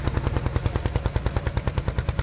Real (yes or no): yes